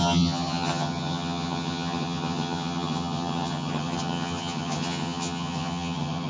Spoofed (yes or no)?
yes